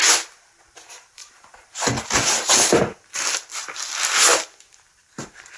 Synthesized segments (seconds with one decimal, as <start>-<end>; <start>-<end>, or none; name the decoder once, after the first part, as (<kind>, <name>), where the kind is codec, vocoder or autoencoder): 1.2-1.9 (vocoder, BigVGAN v2); 4.3-5.6

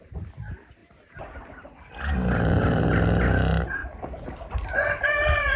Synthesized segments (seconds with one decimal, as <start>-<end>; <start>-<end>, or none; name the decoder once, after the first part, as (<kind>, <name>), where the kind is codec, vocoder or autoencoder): 0.0-0.8 (vocoder, BigVGAN v2); 2.3-5.6

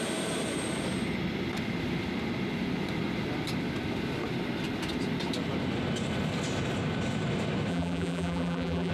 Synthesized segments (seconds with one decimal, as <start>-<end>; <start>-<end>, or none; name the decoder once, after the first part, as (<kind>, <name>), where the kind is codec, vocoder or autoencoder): 7.7-8.9 (vocoder, BigVGAN v2)

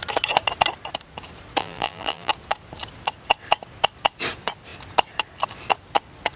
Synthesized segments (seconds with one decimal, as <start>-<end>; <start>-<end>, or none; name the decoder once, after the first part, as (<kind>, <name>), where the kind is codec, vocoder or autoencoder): 1.6-2.3 (vocoder, BigVGAN v2)

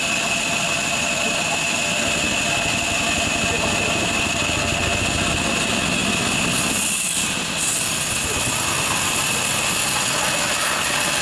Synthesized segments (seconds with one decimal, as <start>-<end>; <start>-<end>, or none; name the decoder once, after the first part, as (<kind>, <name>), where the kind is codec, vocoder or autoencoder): 6.0-7.4 (vocoder, BigVGAN v2)